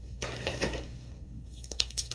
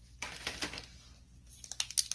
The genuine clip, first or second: second